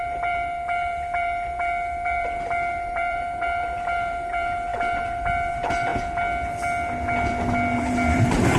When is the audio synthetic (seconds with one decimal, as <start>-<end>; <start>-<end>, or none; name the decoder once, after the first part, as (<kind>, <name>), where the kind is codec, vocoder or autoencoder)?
0.0-5.9 (vocoder, BigVGAN v2); 7.8-8.6